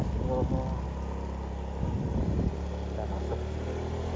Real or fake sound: real